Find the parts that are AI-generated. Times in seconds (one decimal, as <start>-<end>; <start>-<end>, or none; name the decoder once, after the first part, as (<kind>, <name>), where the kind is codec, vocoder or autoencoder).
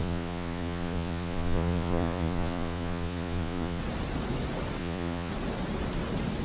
0.0-3.8 (vocoder, Vocos); 4.8-5.3